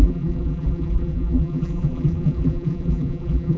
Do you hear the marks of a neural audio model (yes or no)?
yes